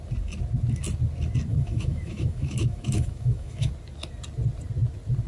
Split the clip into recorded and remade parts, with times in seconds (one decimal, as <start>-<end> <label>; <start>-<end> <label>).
0.0-1.5 recorded; 1.5-3.7 remade; 3.7-5.3 recorded